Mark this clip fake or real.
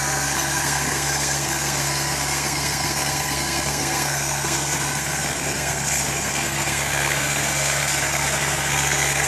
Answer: fake